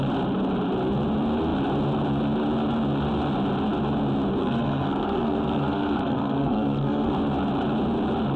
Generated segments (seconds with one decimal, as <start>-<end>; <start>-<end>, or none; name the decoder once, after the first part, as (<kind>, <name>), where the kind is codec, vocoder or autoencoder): 4.4-7.1 (codec, SNAC)